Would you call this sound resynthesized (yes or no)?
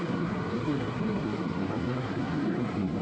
yes